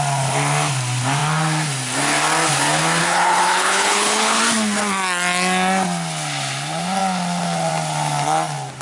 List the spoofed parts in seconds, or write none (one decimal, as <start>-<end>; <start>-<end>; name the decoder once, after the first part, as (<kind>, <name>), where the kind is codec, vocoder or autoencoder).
3.0-4.4 (codec, HILCodec)